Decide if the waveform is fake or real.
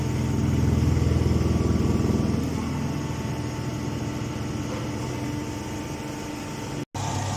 real